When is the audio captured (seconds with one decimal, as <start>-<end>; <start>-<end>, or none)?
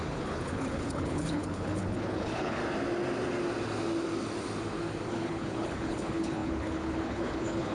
2.6-5.1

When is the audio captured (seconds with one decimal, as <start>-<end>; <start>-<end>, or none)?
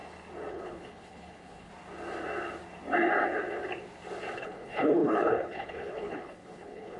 0.0-0.5; 1.7-4.3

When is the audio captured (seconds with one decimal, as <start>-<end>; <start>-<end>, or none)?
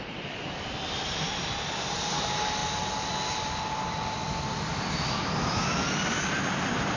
0.0-7.0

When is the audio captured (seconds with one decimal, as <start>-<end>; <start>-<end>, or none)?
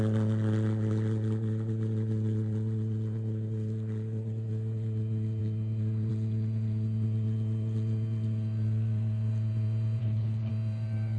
0.0-10.0; 10.5-11.2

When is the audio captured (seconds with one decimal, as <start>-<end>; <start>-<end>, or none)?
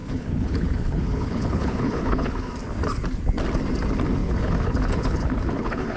2.5-4.2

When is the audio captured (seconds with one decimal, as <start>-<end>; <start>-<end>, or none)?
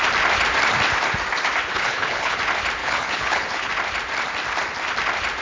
0.0-1.7; 2.4-2.8; 3.7-5.4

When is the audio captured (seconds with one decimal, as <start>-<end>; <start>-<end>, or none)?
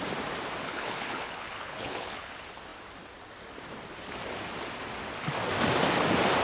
0.0-0.6; 2.3-6.4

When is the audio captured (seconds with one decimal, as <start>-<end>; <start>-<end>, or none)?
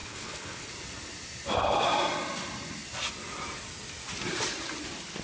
0.7-5.2